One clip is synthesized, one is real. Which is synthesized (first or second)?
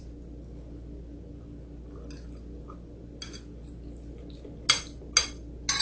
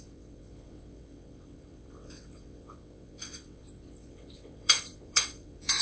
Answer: second